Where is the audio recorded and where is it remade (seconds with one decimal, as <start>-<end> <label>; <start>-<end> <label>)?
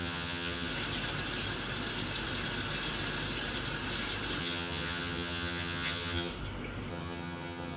0.0-0.7 remade; 0.7-4.4 recorded; 4.4-6.3 remade; 6.3-6.9 recorded; 6.9-7.8 remade